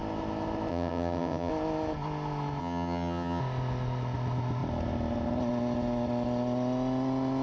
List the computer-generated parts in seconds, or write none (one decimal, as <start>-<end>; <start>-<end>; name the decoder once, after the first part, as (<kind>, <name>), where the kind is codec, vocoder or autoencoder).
0.7-1.5 (vocoder, HiFi-GAN); 2.6-3.4